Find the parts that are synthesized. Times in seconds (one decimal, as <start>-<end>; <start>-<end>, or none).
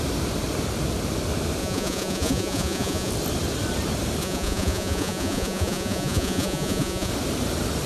1.6-3.1; 4.2-7.1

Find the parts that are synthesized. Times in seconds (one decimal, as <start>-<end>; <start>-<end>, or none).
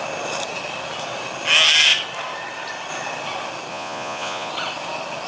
3.7-4.5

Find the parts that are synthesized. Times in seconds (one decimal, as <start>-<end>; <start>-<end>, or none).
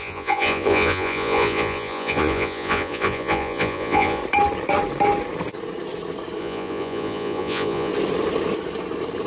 0.0-4.2; 6.4-7.9